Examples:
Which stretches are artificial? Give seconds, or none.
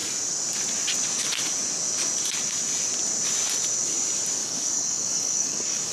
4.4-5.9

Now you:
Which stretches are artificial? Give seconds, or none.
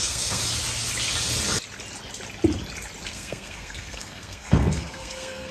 0.0-0.4; 3.1-5.5